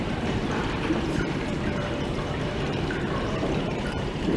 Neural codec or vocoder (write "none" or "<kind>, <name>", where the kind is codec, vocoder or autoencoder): vocoder, BigVGAN v2